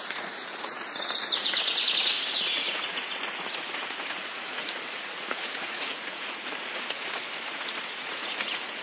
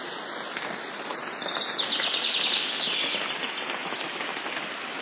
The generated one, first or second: first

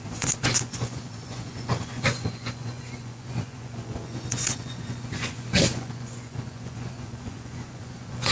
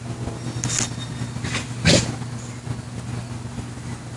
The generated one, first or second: first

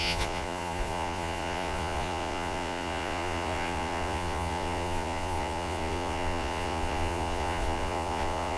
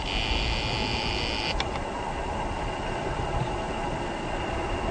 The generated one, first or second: first